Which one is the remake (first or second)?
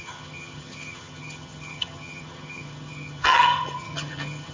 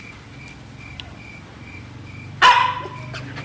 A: first